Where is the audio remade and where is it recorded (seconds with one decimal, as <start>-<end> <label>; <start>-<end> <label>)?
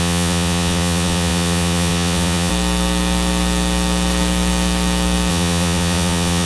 0.0-2.5 remade; 2.5-5.3 recorded; 5.3-6.5 remade